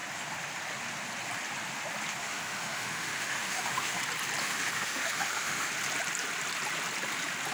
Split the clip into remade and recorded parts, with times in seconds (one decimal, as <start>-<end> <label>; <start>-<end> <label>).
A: 0.0-2.2 recorded; 2.2-4.0 remade; 4.0-4.4 recorded; 4.4-5.7 remade; 5.7-7.5 recorded